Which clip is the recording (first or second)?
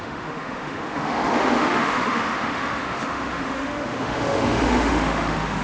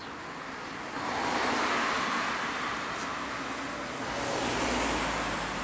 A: second